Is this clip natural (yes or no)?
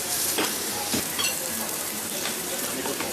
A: no